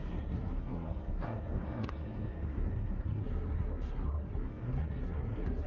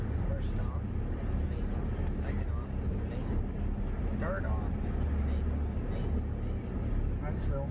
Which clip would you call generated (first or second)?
first